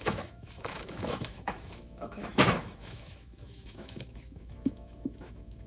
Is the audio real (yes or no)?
no